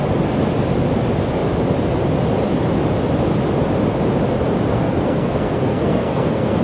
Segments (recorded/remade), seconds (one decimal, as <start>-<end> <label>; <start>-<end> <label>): 0.0-4.7 recorded; 4.7-6.6 remade